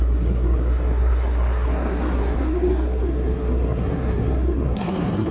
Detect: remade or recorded remade